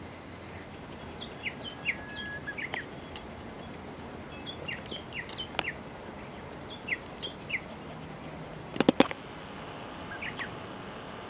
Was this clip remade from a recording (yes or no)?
no